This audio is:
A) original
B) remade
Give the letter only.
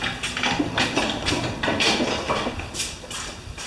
A